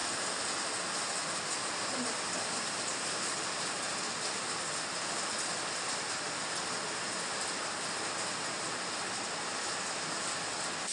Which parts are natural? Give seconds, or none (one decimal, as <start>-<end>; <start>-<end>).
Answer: 0.0-10.9